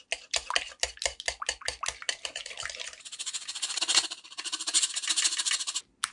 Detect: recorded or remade recorded